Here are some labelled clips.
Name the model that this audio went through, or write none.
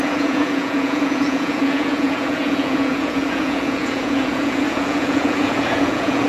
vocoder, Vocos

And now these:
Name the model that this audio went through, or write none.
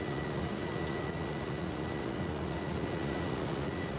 vocoder, Vocos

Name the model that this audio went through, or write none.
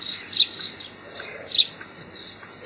none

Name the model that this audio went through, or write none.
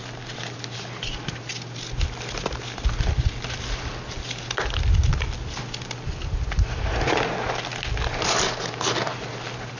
none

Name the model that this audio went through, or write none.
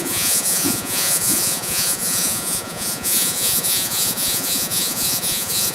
vocoder, Vocos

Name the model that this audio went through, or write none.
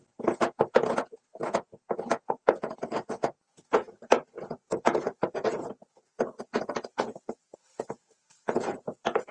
vocoder, Vocos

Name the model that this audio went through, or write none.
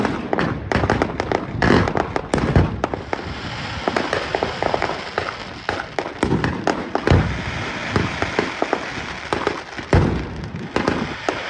none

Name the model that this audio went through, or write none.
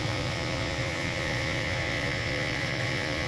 vocoder, Vocos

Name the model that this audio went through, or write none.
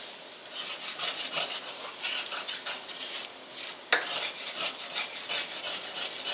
none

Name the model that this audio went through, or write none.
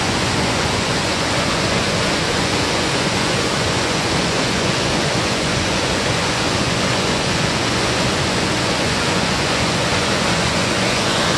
vocoder, Vocos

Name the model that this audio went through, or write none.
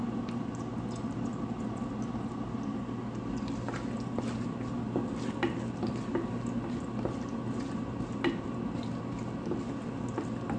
none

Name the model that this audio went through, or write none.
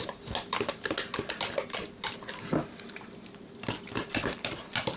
none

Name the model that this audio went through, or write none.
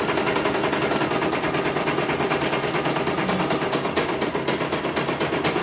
none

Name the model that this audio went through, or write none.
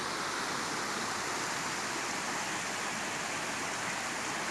none